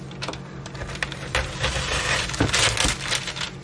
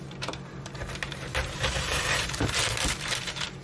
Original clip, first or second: first